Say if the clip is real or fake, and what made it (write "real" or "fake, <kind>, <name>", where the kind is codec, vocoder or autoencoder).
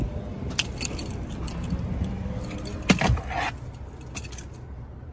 real